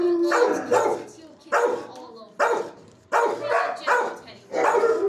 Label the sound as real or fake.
real